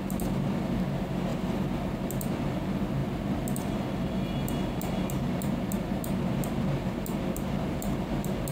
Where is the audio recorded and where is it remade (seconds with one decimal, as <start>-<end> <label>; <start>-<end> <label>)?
0.0-8.5 recorded

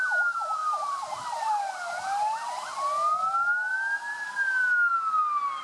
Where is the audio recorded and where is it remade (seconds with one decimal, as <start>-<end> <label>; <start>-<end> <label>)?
0.0-5.6 recorded